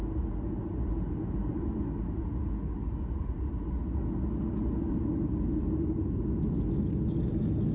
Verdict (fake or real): real